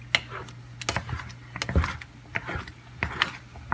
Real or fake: real